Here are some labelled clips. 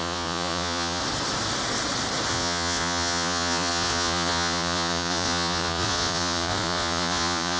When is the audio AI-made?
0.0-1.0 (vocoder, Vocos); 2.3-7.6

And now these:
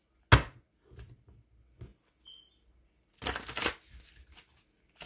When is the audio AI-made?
none

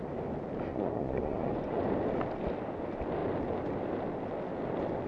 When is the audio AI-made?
0.7-1.8 (vocoder, Vocos)